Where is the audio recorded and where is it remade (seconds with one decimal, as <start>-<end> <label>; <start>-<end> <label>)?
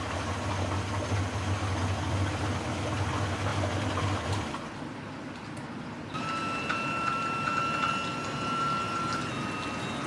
0.0-10.1 recorded